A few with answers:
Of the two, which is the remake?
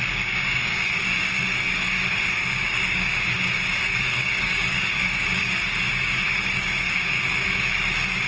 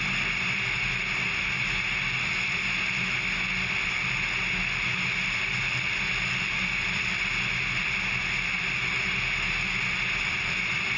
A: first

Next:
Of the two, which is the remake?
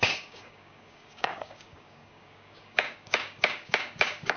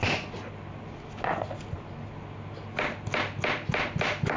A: first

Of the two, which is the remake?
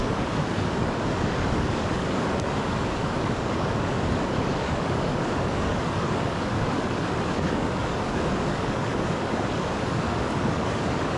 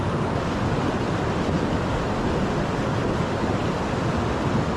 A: first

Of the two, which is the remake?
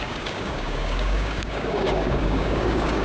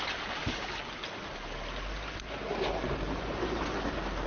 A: first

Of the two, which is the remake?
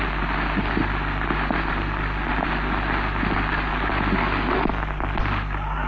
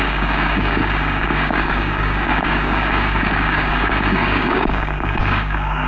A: second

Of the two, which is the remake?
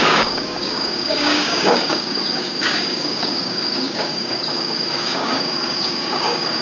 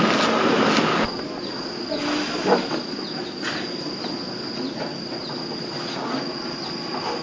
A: first